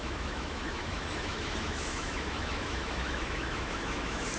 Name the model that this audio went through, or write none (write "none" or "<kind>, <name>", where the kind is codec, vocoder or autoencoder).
autoencoder, DAC-VAE